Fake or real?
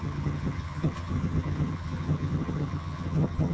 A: fake